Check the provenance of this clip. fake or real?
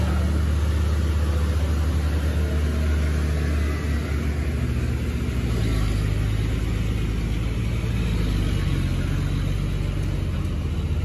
real